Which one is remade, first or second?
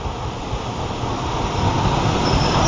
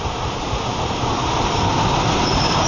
second